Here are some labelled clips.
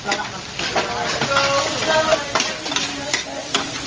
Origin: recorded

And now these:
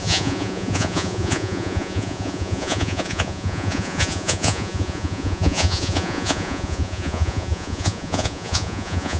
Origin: remade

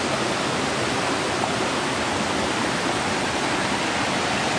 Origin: recorded